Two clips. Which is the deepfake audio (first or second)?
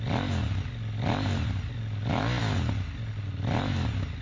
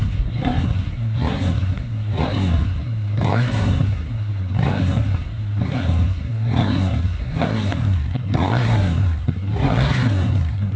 second